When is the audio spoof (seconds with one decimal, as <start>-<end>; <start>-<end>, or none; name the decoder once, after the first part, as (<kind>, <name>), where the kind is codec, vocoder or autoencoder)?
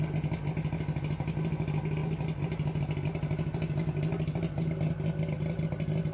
none